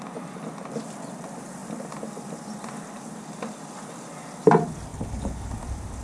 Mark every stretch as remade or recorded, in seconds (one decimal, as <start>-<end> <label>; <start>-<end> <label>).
0.0-4.9 recorded; 4.9-5.5 remade; 5.5-6.0 recorded